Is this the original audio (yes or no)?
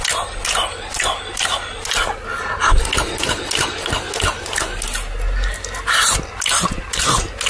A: yes